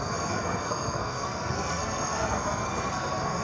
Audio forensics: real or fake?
fake